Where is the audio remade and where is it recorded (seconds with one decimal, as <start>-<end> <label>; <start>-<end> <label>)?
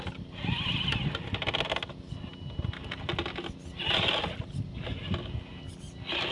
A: 0.0-6.3 recorded